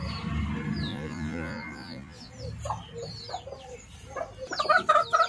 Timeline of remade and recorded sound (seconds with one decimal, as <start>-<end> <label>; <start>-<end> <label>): 0.0-0.9 recorded; 0.9-2.3 remade; 2.3-5.3 recorded